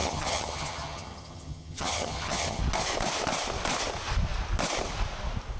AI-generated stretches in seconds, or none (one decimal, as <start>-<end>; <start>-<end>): 0.0-2.6